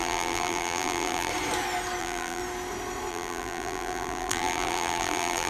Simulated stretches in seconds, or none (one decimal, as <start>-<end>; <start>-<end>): 0.0-1.3; 2.0-2.4; 3.1-5.5